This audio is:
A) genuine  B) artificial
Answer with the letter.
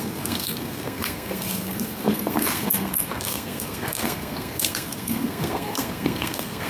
B